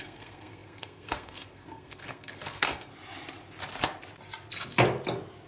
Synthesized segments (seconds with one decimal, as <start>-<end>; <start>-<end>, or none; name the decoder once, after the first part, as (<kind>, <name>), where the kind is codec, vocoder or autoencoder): 0.0-2.9 (codec, SNAC)